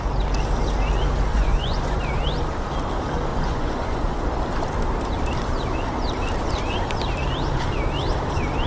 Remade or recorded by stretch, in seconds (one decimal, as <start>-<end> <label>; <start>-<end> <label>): 0.0-1.3 recorded; 1.3-2.0 remade; 2.0-3.3 recorded; 3.3-4.2 remade; 4.2-8.7 recorded